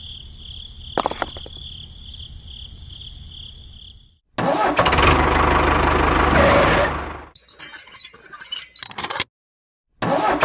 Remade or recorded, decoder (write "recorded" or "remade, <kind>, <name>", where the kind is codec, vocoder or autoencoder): recorded